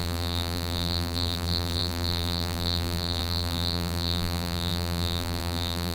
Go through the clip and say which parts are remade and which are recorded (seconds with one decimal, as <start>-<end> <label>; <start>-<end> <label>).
0.0-5.9 remade

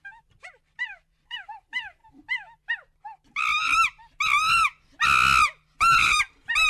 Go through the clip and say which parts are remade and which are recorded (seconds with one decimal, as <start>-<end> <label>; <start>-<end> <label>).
0.0-2.0 remade; 2.0-6.0 recorded; 6.0-6.7 remade

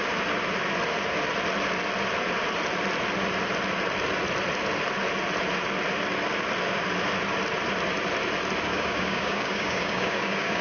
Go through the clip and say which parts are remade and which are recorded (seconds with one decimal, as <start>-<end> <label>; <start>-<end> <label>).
0.0-8.7 recorded; 8.7-10.6 remade

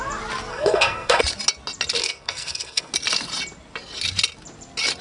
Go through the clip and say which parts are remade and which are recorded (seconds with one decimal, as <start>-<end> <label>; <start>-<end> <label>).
0.0-0.5 recorded; 0.5-1.2 remade; 1.2-2.0 recorded; 2.0-2.9 remade; 2.9-5.0 recorded

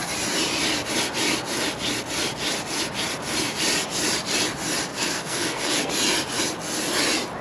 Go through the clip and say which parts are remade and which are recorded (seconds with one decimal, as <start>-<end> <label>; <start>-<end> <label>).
0.0-4.9 recorded; 4.9-5.9 remade; 5.9-7.4 recorded

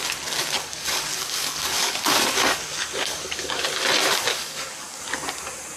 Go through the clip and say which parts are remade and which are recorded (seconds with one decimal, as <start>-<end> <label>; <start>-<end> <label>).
0.0-0.4 recorded; 0.4-3.7 remade; 3.7-4.3 recorded; 4.3-5.0 remade; 5.0-5.8 recorded